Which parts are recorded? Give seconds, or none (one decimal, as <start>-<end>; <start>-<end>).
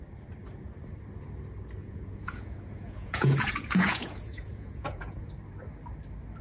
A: 0.0-1.8; 5.3-6.4